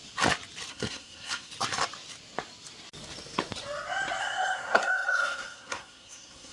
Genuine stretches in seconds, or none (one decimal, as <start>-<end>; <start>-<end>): 0.0-0.7; 1.5-4.2